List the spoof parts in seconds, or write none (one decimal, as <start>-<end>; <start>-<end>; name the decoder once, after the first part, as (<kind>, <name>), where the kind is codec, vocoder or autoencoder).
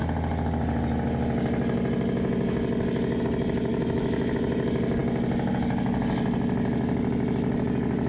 3.7-4.3 (autoencoder, DAC-VAE)